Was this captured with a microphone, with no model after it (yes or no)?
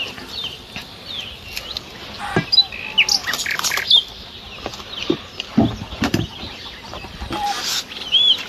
yes